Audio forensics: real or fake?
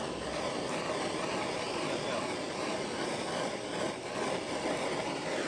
real